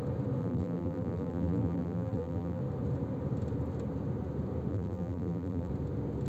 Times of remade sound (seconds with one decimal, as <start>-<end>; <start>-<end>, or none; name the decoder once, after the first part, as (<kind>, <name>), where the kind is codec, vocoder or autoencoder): 0.4-2.6 (vocoder, BigVGAN v2); 4.7-5.7